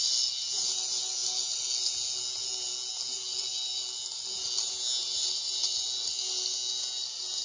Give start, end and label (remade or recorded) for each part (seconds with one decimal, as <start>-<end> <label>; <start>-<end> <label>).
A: 0.0-7.4 recorded